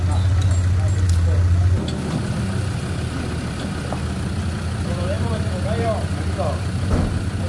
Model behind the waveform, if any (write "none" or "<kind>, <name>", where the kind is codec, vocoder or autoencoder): none